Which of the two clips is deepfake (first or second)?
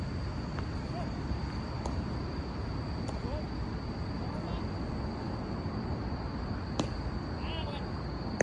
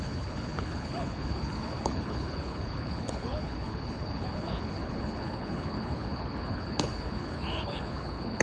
second